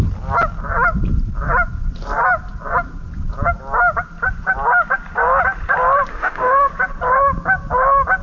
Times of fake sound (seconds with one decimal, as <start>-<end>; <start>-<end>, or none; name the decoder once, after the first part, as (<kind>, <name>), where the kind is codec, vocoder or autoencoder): 6.1-6.7 (autoencoder, DAC-VAE)